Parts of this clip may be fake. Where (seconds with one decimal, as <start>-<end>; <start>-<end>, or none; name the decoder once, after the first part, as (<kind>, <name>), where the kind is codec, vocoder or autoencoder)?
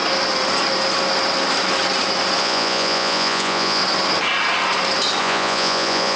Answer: 2.4-3.8 (vocoder, Vocos); 5.2-6.2